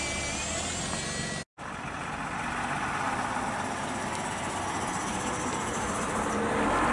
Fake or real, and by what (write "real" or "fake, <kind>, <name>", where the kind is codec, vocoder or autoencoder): real